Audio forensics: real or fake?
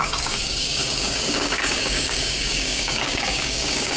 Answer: fake